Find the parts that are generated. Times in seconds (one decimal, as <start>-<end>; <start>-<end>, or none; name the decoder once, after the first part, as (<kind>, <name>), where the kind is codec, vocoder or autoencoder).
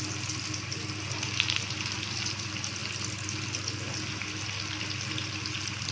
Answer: none